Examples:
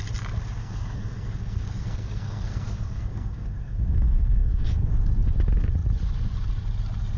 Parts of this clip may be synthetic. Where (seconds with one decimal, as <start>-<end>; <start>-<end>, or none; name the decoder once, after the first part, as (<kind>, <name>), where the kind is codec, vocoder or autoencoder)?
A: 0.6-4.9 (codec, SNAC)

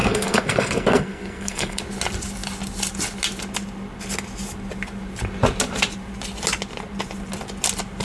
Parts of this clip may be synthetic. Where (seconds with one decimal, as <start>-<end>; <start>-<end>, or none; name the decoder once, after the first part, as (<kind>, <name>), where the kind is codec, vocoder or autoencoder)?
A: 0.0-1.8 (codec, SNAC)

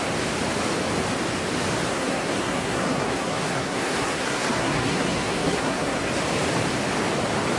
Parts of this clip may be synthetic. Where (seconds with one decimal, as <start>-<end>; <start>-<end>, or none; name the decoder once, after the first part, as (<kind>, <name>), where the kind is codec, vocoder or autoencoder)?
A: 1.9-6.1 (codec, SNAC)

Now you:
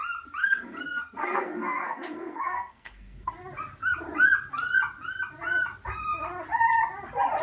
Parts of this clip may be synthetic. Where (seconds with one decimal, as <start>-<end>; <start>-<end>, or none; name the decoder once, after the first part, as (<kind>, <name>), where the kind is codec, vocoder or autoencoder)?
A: 0.4-3.3 (codec, SNAC)